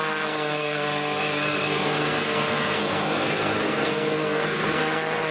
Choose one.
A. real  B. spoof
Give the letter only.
B